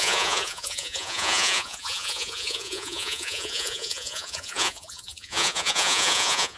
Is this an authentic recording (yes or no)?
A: no